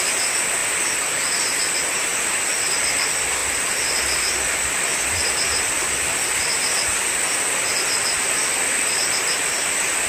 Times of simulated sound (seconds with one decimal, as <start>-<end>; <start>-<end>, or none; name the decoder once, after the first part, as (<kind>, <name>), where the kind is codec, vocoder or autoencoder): none